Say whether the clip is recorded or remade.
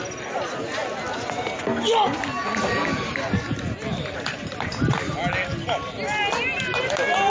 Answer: recorded